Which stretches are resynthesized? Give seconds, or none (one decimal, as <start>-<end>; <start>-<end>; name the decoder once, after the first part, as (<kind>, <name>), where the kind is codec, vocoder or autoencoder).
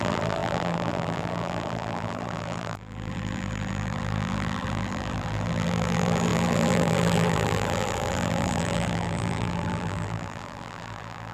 0.0-11.3 (vocoder, BigVGAN v2)